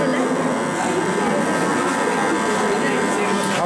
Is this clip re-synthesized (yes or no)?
no